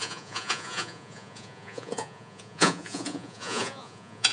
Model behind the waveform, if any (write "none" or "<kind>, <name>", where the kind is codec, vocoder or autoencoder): vocoder, Vocos